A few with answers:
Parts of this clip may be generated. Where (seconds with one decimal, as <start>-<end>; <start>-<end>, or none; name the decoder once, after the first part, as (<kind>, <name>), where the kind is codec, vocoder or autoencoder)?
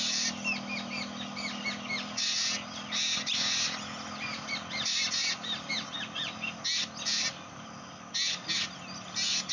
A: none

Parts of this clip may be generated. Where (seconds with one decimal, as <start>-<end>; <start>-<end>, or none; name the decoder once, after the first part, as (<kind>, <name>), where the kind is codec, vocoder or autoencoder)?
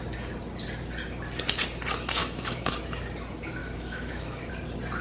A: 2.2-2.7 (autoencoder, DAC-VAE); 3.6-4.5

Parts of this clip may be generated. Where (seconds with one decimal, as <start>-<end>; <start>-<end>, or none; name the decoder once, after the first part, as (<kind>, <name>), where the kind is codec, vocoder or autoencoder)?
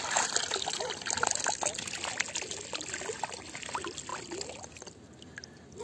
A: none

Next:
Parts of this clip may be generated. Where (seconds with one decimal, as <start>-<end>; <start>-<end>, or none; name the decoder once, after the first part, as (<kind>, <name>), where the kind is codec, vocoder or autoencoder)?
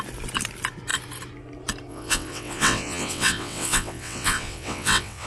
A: 1.9-5.3 (vocoder, WaveNeXt)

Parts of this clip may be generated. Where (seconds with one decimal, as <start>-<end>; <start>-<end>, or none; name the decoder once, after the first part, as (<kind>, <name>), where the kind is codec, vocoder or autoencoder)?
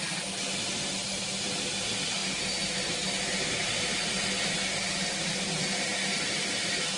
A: none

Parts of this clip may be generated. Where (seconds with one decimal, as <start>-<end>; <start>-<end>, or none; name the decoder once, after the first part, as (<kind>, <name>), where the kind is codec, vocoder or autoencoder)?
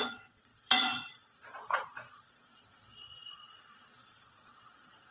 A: 0.0-5.1 (vocoder, Vocos)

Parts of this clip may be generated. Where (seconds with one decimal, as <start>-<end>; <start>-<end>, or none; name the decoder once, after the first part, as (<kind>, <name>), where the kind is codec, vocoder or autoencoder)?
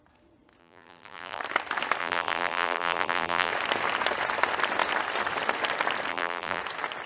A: 0.6-1.4 (vocoder, BigVGAN v2); 2.0-3.5; 6.1-6.6